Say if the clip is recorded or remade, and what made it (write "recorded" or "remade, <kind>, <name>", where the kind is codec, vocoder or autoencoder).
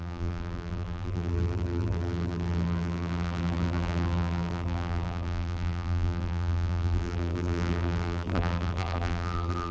remade, vocoder, BigVGAN v2